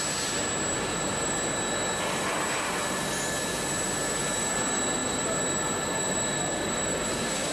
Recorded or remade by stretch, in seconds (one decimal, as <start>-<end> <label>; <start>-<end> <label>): 0.0-7.5 recorded